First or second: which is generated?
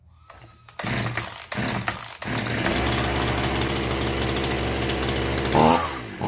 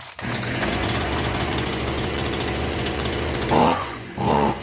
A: second